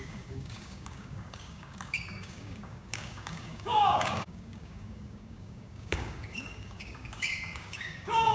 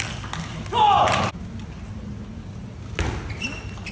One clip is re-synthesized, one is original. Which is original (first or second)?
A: second